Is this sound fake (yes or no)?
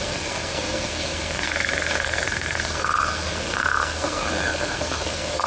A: yes